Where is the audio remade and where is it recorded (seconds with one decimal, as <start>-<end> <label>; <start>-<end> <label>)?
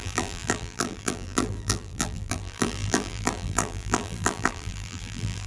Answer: 0.0-5.5 remade